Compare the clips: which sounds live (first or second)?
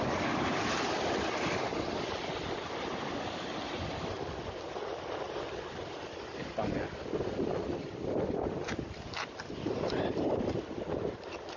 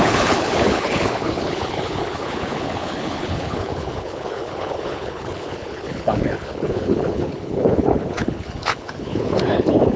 first